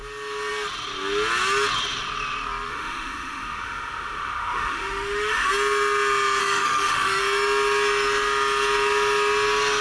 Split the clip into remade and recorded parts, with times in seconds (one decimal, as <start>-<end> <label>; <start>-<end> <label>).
0.0-2.7 recorded; 2.7-5.5 remade; 5.5-6.4 recorded; 6.4-7.2 remade; 7.2-9.8 recorded